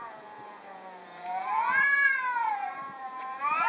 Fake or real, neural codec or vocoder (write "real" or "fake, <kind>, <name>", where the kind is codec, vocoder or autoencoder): fake, vocoder, Vocos